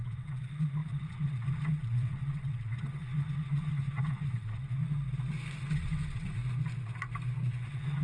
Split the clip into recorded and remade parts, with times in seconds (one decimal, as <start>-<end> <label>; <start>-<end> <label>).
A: 0.0-4.8 remade; 4.8-5.6 recorded; 5.6-6.4 remade; 6.4-7.5 recorded; 7.5-8.0 remade